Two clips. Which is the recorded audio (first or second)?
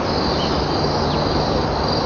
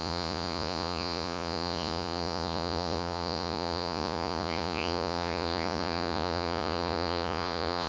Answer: first